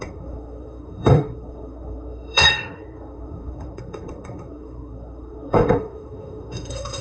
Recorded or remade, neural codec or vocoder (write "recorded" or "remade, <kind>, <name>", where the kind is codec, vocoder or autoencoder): remade, codec, SNAC